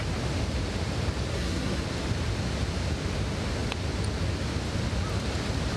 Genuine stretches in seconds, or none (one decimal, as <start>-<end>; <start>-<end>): 0.0-1.3; 1.8-5.8